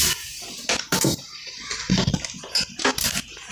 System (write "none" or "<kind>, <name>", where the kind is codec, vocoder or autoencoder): none